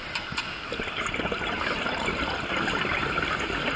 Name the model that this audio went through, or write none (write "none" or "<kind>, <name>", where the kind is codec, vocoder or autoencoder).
none